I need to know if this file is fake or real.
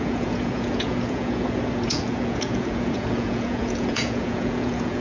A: fake